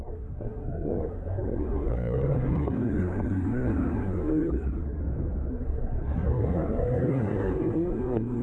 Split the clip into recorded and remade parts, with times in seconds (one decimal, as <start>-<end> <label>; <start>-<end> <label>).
0.0-5.0 remade; 5.0-5.5 recorded; 5.5-8.4 remade